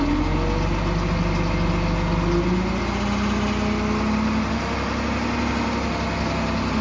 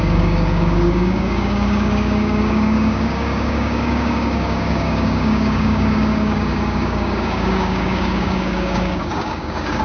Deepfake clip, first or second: second